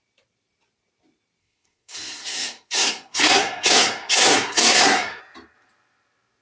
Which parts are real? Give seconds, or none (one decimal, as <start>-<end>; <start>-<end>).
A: 0.0-1.4; 5.2-6.4